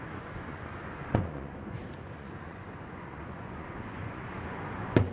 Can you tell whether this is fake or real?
fake